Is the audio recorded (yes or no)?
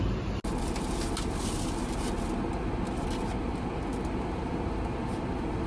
yes